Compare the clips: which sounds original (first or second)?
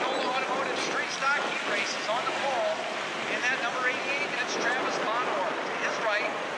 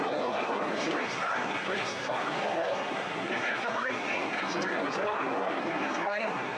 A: first